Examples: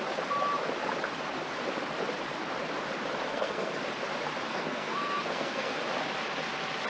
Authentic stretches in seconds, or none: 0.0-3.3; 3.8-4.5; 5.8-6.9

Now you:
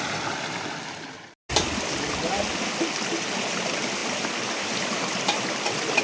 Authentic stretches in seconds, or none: 0.0-6.0

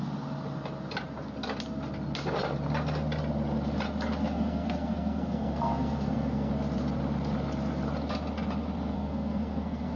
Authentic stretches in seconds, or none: 0.0-4.2; 6.5-8.9

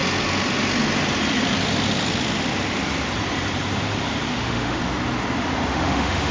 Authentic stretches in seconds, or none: 0.0-4.3; 4.8-5.7

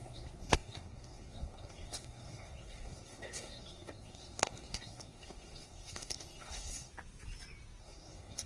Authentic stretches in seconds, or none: 6.9-7.8